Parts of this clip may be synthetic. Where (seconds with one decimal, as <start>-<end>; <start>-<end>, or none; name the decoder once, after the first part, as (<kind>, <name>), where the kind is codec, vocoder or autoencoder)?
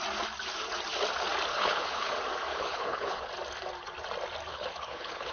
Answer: 1.5-2.1 (codec, HILCodec); 2.5-3.3; 4.5-5.3